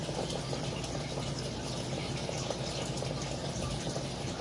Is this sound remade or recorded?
recorded